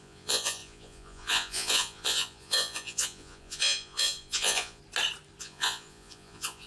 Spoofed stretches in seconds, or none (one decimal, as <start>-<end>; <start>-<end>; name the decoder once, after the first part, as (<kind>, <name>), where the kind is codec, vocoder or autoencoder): 0.0-4.8 (vocoder, Vocos); 5.4-6.7